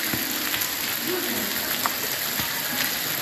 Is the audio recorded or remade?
recorded